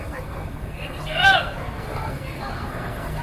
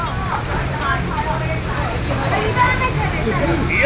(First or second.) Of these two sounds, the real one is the second